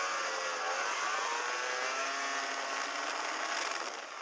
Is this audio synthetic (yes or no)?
no